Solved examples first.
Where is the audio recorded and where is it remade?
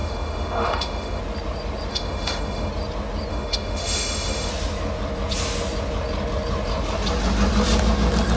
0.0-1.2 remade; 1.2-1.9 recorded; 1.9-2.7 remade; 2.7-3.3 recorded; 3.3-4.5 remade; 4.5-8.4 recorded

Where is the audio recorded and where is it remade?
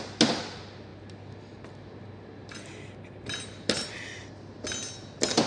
0.0-5.5 recorded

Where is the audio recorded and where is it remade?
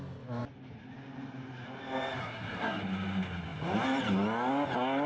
0.0-2.2 recorded; 2.2-2.8 remade; 2.8-5.1 recorded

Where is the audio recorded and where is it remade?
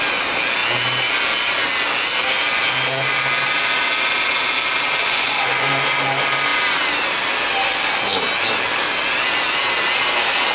0.0-5.0 recorded; 5.0-5.7 remade; 5.7-10.5 recorded